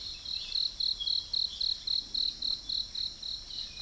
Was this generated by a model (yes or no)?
no